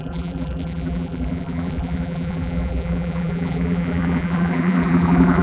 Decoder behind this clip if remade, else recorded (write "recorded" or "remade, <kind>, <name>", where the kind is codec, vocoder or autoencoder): remade, vocoder, BigVGAN v2